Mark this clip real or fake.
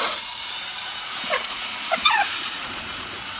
fake